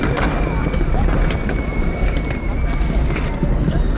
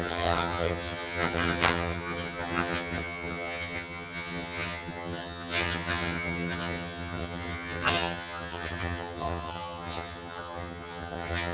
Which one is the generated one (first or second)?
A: second